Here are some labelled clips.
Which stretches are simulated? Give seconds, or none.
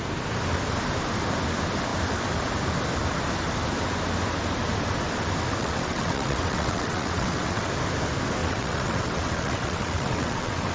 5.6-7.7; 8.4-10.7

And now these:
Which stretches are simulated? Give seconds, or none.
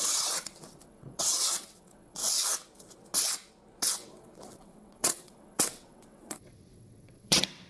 0.0-2.2; 3.8-7.7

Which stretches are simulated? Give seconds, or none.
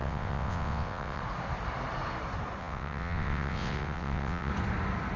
0.0-1.2; 2.6-4.5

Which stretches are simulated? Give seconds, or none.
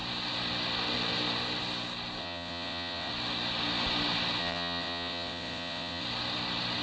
2.2-3.1; 4.4-6.0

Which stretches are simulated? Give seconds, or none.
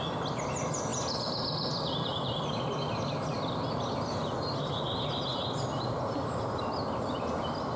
none